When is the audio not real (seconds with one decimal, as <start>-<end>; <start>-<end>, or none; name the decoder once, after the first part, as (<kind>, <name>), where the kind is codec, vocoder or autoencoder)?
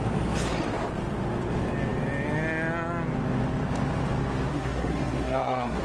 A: 4.5-5.8 (codec, SNAC)